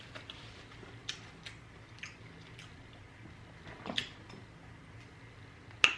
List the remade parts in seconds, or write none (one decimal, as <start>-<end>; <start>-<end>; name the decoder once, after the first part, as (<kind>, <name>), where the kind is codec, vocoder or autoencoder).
none